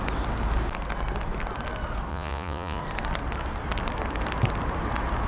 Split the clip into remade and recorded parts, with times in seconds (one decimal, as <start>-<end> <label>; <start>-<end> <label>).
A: 0.0-2.1 recorded; 2.1-2.8 remade; 2.8-5.3 recorded